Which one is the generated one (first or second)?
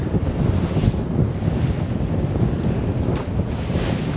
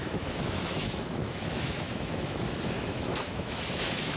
second